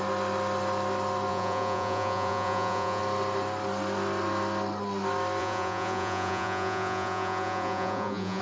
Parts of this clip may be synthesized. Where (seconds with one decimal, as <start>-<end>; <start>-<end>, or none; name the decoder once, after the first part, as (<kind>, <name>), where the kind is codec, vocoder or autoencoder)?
1.3-3.0 (vocoder, Vocos); 5.4-8.4